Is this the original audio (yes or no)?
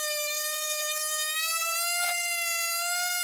no